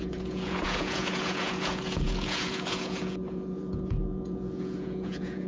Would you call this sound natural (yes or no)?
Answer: no